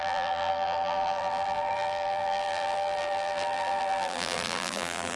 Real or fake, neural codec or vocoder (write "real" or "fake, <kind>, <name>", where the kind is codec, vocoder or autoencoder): fake, vocoder, BigVGAN v2